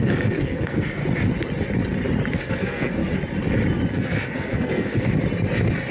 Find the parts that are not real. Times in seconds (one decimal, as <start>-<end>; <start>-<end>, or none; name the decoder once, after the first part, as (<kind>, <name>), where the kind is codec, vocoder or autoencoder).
0.0-1.0 (codec, SNAC); 2.5-3.0; 3.9-5.1